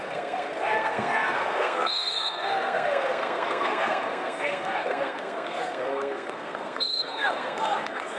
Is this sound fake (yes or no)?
yes